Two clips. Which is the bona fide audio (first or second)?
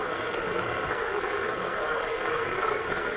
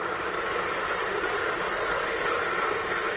second